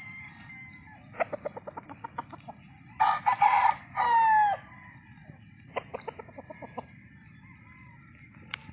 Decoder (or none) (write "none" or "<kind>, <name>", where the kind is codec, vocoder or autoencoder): none